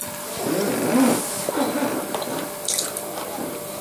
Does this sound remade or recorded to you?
recorded